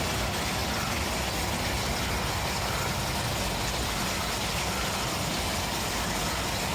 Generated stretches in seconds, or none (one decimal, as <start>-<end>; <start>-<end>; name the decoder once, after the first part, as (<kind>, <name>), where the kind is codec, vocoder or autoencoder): none